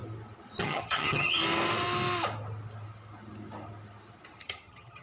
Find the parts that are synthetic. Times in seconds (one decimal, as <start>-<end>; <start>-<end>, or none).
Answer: 0.6-1.4; 4.4-5.0

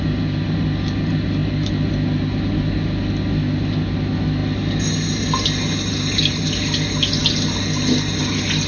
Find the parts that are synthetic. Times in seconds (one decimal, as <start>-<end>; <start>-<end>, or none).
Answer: none

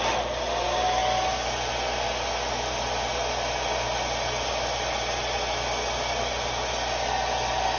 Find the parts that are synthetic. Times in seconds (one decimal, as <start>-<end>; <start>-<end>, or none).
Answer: none

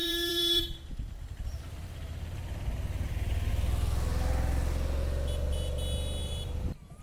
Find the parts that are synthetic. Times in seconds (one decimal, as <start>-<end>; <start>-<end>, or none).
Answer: 0.0-3.5; 6.2-7.0